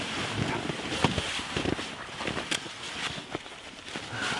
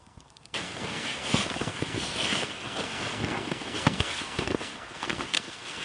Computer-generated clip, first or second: second